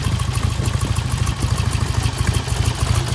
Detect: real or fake real